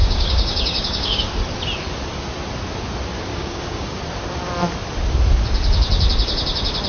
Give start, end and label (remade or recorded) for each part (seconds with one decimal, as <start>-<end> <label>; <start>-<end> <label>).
0.0-1.2 remade; 1.2-3.3 recorded; 3.3-4.0 remade; 4.0-6.9 recorded